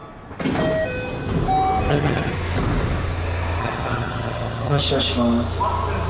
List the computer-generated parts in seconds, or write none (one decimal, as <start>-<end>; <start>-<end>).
1.9-2.3; 3.6-4.8